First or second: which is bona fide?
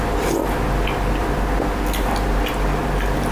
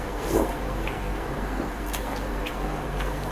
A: first